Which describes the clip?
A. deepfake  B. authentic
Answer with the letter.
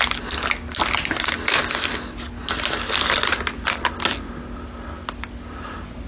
B